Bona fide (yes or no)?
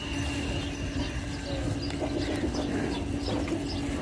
yes